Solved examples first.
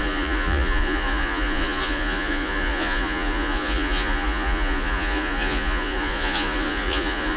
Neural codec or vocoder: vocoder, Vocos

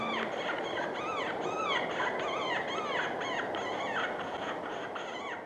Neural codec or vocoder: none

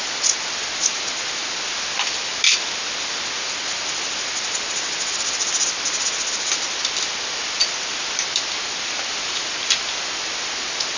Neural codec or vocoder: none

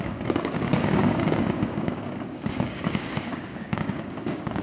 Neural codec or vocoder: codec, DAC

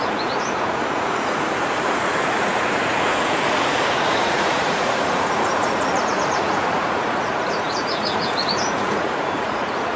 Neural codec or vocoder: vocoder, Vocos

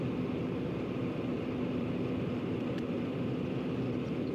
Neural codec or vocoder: vocoder, BigVGAN v2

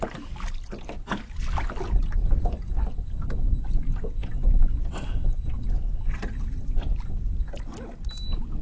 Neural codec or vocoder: none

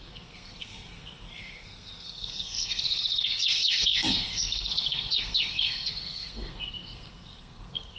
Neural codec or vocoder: codec, SNAC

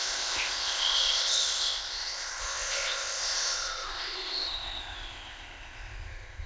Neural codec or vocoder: codec, ZipCodec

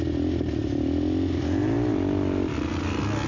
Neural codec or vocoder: none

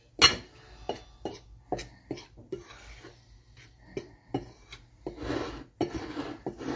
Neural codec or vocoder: none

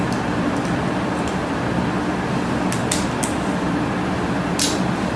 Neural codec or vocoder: none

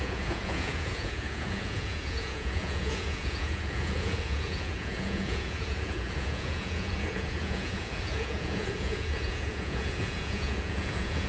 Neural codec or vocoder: vocoder, Vocos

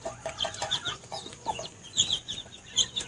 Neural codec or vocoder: vocoder, Vocos